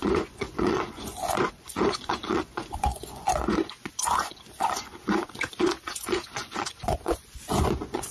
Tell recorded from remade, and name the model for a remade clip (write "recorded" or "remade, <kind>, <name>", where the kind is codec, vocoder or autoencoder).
remade, vocoder, Vocos